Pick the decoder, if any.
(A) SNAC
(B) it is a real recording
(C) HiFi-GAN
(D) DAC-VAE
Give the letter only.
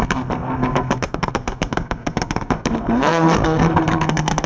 A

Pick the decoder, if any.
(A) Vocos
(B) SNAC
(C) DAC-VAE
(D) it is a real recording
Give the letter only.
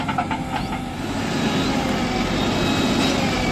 D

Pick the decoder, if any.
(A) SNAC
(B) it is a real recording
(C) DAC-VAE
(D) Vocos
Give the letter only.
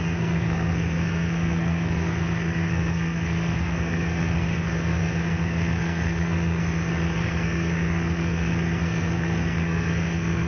A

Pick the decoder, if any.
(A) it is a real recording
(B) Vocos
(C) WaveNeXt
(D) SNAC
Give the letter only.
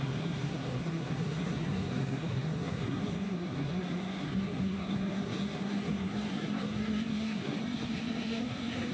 D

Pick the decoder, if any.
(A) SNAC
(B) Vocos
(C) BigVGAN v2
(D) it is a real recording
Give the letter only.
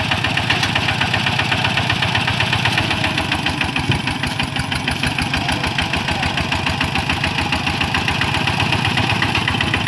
D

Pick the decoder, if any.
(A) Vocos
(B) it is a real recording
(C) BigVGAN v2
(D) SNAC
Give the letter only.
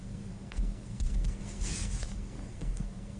D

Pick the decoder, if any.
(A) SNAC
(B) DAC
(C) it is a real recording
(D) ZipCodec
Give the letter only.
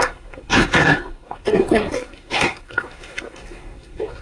A